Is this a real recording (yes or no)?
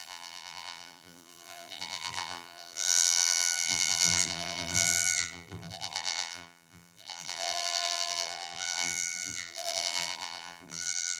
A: no